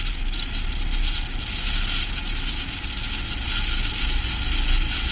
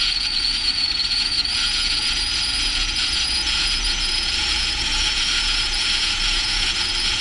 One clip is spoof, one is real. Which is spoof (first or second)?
second